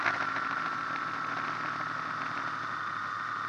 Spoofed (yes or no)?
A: no